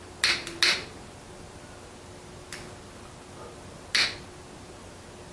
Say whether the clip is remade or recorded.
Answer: recorded